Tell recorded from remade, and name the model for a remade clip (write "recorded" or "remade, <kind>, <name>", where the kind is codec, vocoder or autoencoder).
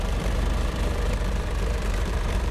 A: remade, vocoder, BigVGAN v2